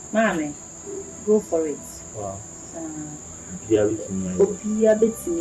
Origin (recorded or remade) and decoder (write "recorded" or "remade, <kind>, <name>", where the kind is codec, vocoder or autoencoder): remade, vocoder, BigVGAN v2